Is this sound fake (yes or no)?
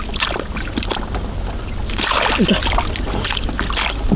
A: no